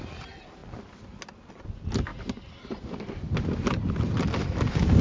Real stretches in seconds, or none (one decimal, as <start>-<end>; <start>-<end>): 0.0-5.0